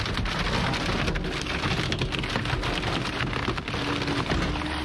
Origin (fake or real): real